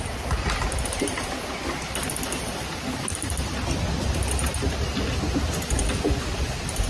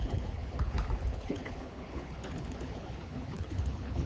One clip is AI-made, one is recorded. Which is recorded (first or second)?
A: first